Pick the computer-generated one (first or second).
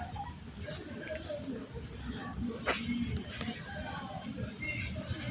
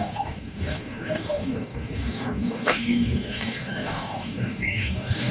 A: second